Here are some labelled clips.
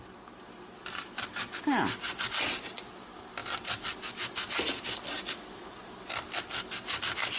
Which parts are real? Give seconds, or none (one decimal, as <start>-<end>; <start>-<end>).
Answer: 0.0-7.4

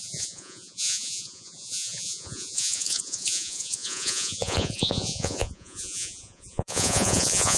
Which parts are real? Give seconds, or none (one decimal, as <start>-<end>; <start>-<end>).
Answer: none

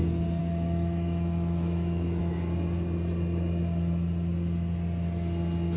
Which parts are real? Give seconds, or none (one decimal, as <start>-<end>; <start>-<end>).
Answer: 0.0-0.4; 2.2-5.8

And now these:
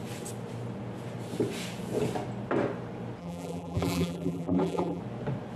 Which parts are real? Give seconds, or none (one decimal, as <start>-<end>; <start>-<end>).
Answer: 0.0-3.2; 5.0-5.6

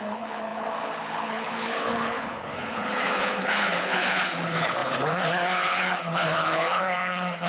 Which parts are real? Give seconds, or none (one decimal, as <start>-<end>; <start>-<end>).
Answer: none